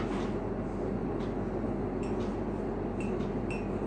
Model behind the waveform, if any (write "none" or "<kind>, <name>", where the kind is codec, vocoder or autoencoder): none